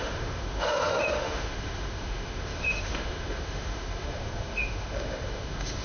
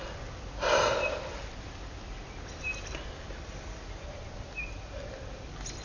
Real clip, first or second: second